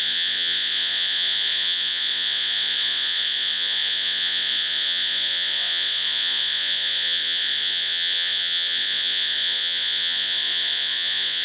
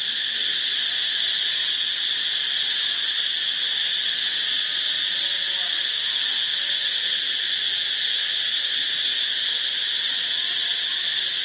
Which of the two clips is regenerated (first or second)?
first